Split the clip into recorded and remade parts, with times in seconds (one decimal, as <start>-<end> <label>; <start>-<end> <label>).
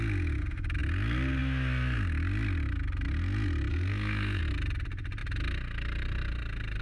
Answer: 0.0-3.7 recorded; 3.7-4.4 remade; 4.4-6.8 recorded